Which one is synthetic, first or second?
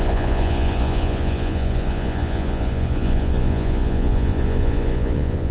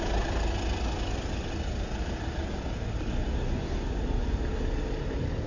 first